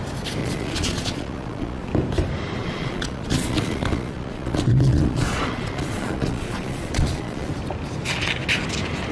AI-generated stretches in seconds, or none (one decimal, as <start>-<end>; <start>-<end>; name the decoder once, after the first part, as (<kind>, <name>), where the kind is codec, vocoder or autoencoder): 0.4-1.9 (vocoder, Vocos); 2.6-7.5